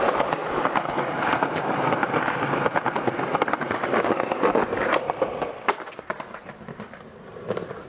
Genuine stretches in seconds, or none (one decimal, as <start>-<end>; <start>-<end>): 0.0-7.9